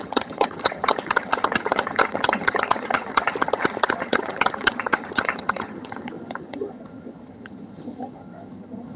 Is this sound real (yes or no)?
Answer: no